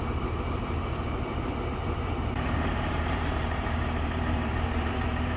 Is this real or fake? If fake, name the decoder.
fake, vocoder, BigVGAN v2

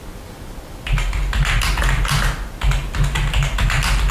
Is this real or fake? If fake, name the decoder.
real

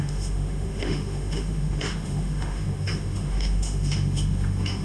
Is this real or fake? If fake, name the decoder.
fake, autoencoder, DAC-VAE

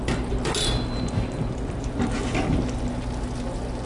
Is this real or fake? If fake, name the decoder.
real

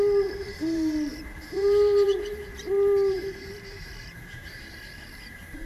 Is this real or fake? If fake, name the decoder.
fake, vocoder, BigVGAN v2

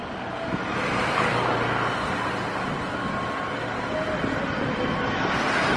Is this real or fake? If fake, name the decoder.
real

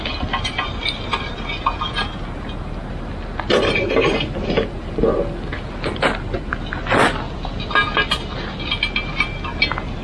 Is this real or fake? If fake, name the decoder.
real